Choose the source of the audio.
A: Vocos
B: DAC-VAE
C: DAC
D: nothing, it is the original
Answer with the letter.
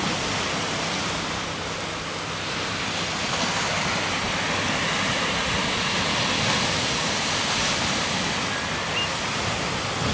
D